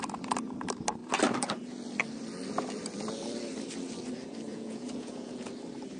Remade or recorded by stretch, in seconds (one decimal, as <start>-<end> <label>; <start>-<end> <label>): 0.0-4.5 recorded; 4.5-5.5 remade; 5.5-6.0 recorded